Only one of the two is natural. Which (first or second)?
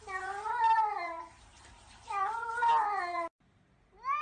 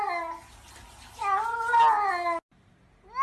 second